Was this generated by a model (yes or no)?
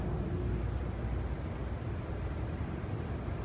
no